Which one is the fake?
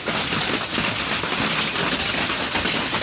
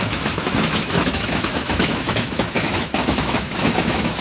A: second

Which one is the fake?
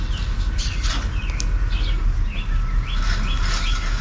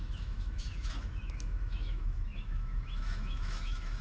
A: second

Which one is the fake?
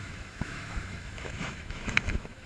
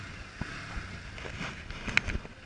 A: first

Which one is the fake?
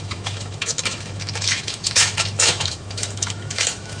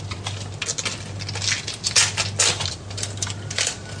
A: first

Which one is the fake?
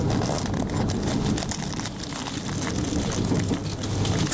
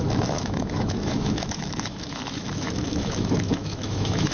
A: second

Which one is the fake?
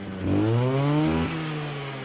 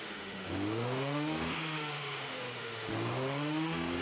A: second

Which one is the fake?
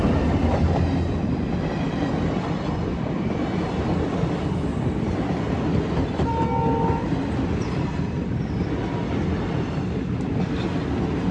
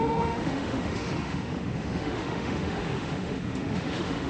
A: second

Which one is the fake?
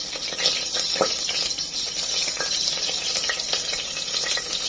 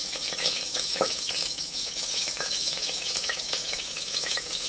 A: second